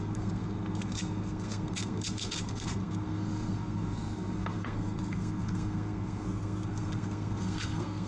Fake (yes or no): yes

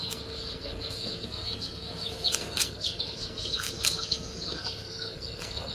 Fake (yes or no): yes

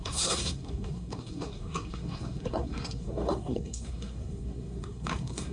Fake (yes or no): yes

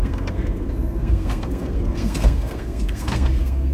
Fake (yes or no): yes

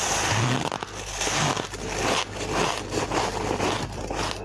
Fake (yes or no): no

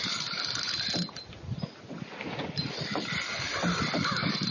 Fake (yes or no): no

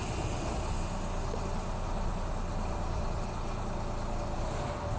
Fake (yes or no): no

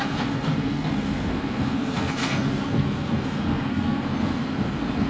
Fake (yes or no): yes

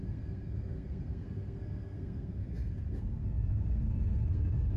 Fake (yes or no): yes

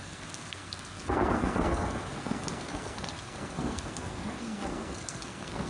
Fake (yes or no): yes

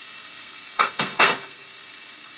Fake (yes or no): yes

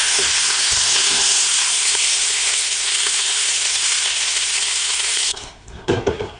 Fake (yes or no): yes